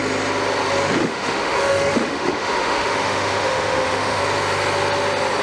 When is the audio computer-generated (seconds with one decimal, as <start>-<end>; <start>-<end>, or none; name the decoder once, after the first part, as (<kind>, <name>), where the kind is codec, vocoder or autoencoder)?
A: 1.0-4.2 (autoencoder, DAC-VAE)